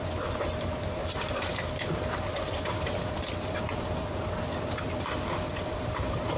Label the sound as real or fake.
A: fake